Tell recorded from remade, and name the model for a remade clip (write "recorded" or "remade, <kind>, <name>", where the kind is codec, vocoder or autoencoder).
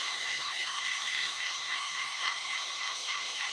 remade, codec, SNAC